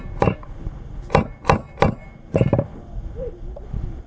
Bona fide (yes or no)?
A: yes